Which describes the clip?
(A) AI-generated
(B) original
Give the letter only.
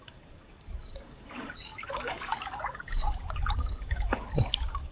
A